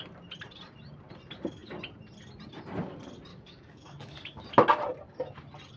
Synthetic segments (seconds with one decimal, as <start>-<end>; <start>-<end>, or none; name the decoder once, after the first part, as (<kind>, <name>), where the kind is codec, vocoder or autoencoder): 3.3-4.5 (codec, DAC)